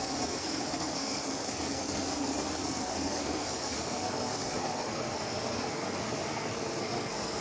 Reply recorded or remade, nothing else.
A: remade